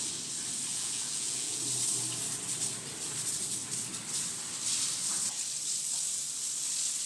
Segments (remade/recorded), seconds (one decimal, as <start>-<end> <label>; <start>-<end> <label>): 0.0-0.7 recorded; 0.7-1.6 remade; 1.6-7.1 recorded